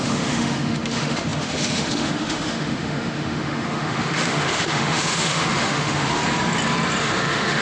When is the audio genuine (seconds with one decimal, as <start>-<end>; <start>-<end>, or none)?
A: 6.2-7.0